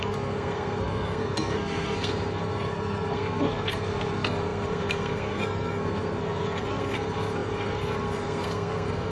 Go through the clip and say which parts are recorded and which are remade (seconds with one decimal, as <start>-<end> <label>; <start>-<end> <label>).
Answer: 0.0-9.1 remade